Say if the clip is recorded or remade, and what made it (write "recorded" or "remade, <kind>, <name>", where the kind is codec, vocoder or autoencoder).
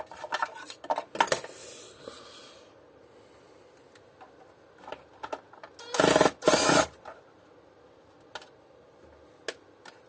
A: recorded